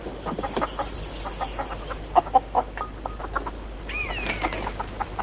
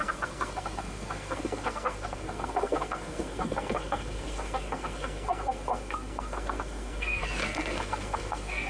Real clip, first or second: first